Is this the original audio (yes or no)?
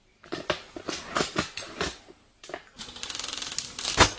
yes